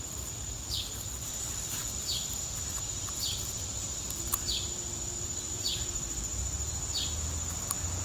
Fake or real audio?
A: fake